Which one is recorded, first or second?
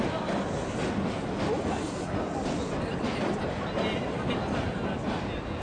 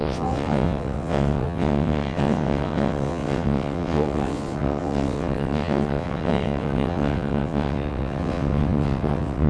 first